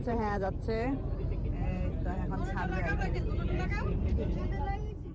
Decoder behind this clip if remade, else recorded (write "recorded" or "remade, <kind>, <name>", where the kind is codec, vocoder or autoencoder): remade, vocoder, BigVGAN v2